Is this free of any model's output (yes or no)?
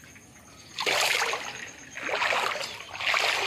yes